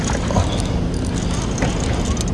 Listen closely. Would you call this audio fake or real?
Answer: real